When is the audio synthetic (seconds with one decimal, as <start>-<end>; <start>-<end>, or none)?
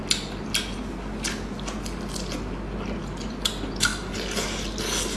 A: none